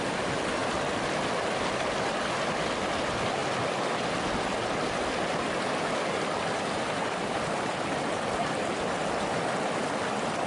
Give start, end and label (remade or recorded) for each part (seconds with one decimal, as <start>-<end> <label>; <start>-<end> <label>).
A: 0.0-10.5 recorded